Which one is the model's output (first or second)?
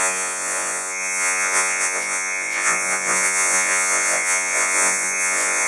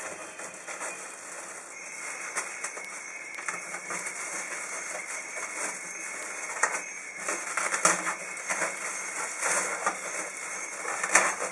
first